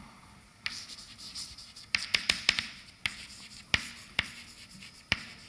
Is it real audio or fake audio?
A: real